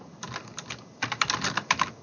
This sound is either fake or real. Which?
real